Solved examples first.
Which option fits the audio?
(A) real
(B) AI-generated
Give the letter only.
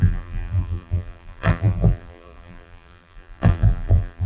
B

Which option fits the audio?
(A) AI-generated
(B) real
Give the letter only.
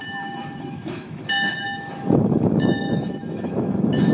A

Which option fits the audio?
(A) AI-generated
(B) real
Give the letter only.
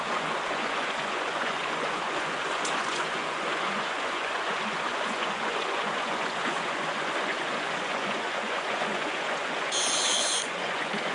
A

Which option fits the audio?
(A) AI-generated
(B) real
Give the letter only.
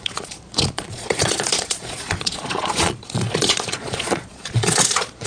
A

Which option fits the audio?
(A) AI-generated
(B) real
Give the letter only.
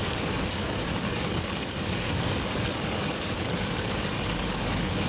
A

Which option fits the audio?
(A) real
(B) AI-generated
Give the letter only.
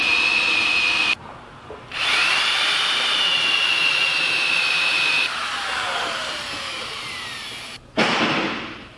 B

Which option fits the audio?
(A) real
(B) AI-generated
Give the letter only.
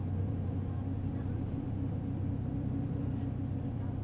B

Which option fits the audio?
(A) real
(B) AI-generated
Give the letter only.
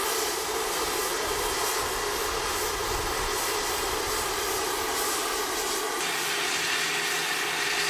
A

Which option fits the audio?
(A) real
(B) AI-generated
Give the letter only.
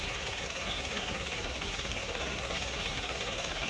B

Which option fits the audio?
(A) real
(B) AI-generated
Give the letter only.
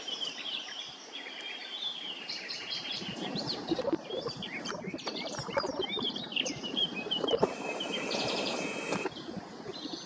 B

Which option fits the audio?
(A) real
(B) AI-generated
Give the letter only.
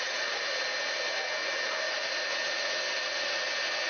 A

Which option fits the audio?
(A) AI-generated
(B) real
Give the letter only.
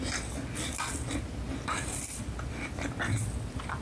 B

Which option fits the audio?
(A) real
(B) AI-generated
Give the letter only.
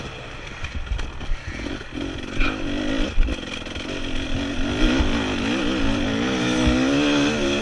A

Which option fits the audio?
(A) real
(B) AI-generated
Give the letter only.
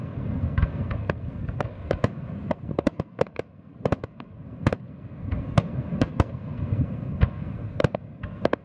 B